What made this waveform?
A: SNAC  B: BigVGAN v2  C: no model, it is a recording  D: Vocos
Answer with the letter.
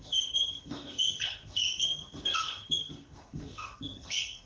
A